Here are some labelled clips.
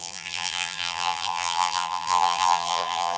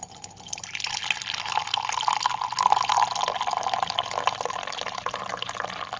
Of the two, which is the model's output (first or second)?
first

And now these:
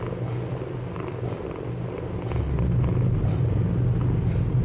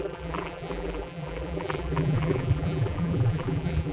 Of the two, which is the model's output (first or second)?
second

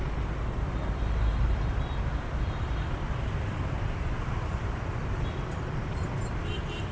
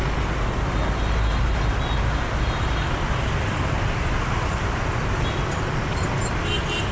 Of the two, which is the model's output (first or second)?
first